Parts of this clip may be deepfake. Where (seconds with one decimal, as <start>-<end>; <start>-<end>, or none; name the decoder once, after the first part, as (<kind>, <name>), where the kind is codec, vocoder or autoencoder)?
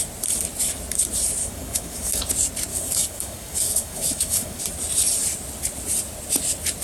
1.4-2.3 (codec, DAC); 2.7-4.6